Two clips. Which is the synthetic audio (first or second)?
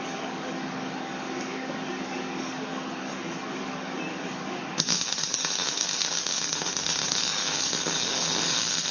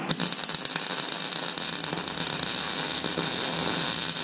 first